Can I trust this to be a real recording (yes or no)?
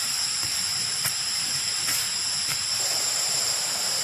no